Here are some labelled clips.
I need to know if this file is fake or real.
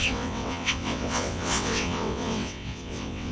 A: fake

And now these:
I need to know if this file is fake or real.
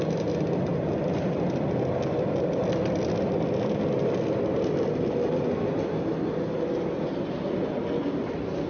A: real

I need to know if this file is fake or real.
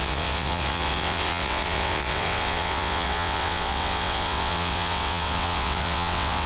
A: fake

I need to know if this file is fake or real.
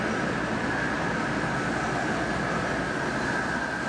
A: real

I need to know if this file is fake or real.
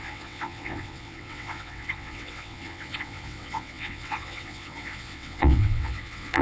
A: fake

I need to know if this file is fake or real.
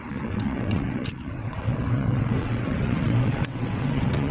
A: fake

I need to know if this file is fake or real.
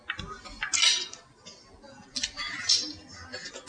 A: real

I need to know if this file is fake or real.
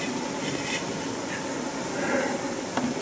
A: real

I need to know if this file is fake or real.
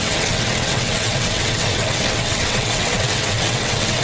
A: fake